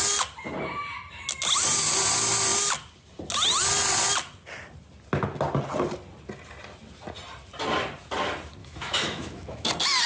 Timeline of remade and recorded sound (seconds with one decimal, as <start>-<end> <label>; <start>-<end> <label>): 0.0-8.6 recorded; 8.6-9.7 remade; 9.7-10.1 recorded